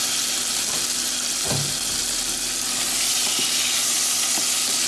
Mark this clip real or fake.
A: real